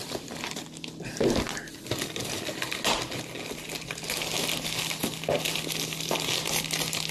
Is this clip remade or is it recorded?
recorded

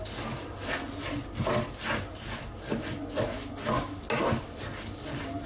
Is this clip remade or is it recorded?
recorded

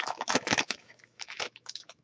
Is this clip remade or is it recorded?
remade